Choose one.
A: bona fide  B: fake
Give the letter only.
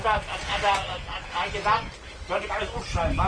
A